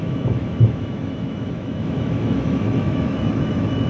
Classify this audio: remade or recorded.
remade